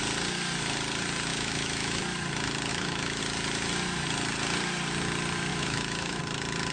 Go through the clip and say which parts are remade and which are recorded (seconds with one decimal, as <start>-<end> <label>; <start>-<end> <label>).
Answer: 0.0-1.3 recorded; 1.3-2.0 remade; 2.0-2.7 recorded; 2.7-3.2 remade; 3.2-5.5 recorded; 5.5-6.2 remade; 6.2-6.7 recorded